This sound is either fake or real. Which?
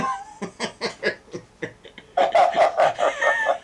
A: real